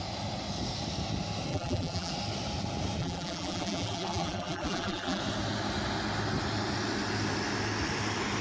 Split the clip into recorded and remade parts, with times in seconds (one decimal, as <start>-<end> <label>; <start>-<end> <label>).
0.0-1.5 recorded; 1.5-2.1 remade; 2.1-3.0 recorded; 3.0-5.2 remade; 5.2-8.4 recorded